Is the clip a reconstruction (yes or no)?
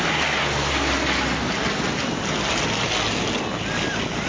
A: no